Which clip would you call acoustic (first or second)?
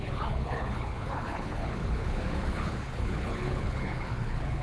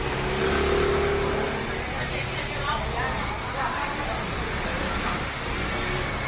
second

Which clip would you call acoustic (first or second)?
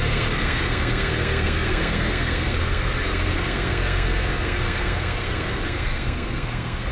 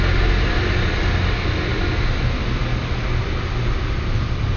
second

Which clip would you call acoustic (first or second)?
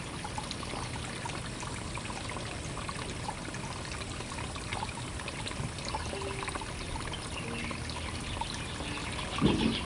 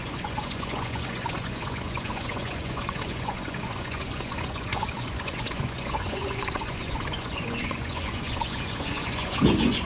first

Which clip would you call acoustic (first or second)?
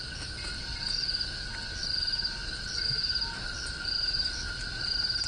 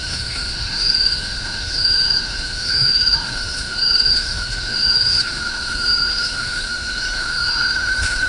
first